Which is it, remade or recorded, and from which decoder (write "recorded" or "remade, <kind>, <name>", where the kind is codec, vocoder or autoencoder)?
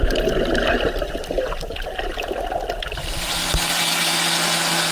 recorded